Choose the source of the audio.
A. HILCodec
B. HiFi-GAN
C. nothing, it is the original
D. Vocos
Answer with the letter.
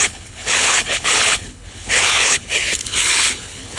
A